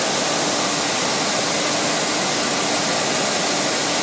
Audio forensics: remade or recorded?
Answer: recorded